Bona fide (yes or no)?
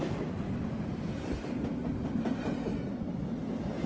yes